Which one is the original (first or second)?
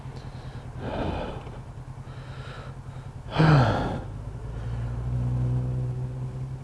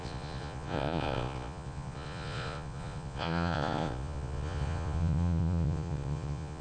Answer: first